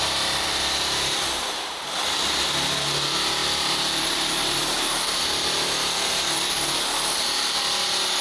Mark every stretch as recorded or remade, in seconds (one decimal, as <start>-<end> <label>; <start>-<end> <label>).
0.0-3.4 recorded; 3.4-6.2 remade; 6.2-8.2 recorded